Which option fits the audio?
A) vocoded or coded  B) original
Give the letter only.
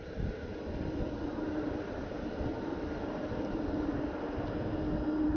B